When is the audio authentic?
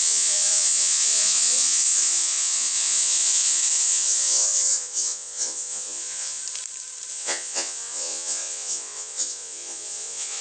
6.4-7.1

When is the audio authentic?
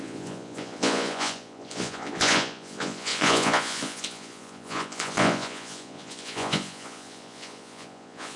none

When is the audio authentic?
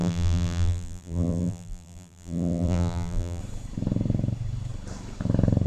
3.4-5.7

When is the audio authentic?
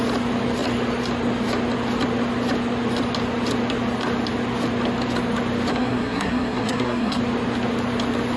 0.0-5.7; 7.2-8.4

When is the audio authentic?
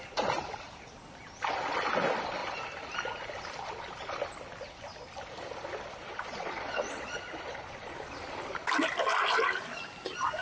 0.0-6.1; 8.0-10.4